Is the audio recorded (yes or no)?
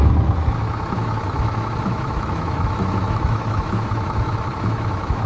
no